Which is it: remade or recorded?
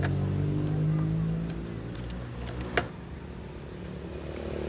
recorded